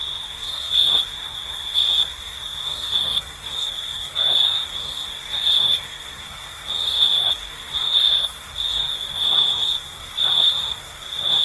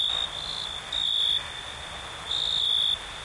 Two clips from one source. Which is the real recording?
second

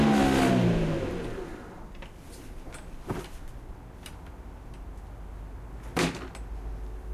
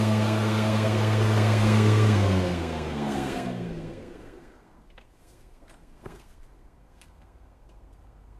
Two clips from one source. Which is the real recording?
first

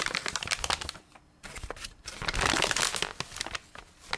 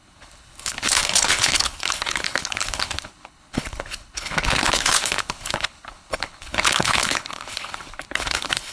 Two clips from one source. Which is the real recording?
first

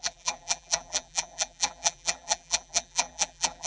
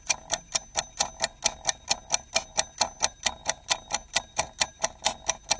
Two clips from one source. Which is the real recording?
second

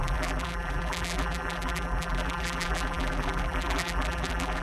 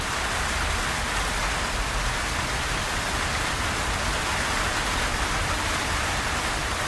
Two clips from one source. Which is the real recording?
second